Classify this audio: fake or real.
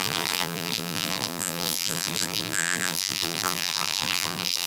fake